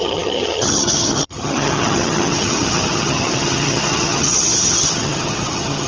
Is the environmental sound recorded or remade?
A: remade